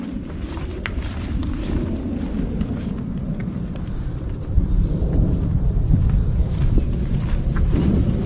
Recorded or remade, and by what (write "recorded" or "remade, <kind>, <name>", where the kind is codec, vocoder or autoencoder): remade, vocoder, BigVGAN v2